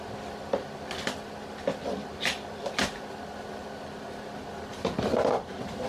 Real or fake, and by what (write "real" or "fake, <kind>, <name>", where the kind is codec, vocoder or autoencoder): real